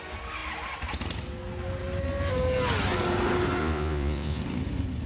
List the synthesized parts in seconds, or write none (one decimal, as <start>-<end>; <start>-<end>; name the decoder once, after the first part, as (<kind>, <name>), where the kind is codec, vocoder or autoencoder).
3.6-4.4 (vocoder, Vocos)